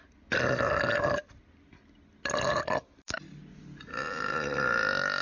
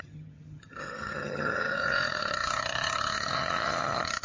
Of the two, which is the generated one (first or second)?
second